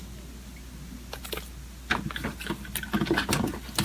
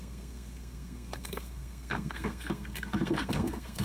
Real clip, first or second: first